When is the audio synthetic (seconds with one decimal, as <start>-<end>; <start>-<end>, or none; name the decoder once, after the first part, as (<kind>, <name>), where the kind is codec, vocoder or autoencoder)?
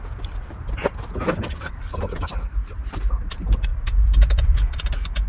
3.7-5.3 (vocoder, BigVGAN v2)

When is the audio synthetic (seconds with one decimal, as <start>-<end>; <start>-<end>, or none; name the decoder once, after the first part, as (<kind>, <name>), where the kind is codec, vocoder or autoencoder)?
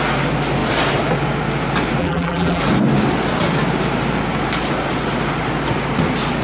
2.0-2.6 (vocoder, BigVGAN v2)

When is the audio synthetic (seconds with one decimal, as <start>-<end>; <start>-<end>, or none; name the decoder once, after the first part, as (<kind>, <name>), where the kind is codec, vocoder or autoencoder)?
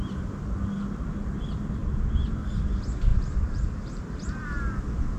3.1-4.6 (vocoder, BigVGAN v2)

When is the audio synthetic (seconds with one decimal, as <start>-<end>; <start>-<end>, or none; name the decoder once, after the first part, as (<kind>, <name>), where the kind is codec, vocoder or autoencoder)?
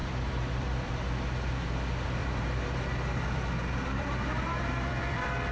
0.0-0.9 (vocoder, BigVGAN v2); 2.2-5.5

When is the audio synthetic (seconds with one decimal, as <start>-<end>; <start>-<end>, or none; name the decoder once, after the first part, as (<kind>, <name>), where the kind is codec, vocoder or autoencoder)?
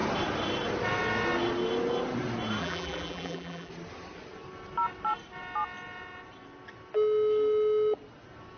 2.6-3.7 (vocoder, BigVGAN v2)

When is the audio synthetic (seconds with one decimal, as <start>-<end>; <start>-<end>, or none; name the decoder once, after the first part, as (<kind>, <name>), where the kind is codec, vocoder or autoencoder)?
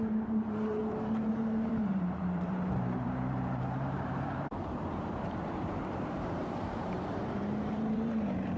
0.0-0.8 (vocoder, BigVGAN v2); 1.3-8.6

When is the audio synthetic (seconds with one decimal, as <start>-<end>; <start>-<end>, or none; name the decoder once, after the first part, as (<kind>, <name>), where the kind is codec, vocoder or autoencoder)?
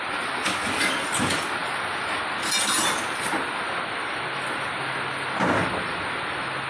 none